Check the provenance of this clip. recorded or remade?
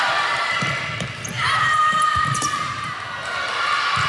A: remade